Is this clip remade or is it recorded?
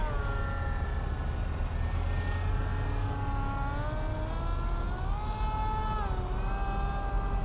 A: recorded